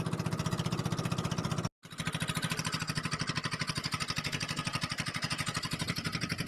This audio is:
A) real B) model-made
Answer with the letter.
A